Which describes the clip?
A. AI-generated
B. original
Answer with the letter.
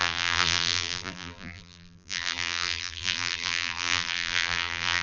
A